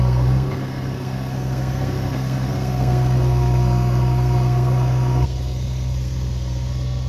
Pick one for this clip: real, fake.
fake